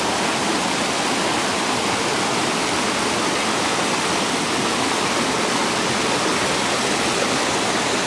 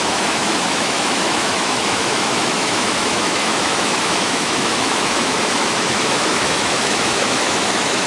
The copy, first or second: second